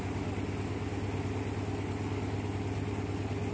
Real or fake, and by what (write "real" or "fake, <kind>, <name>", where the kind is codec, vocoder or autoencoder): real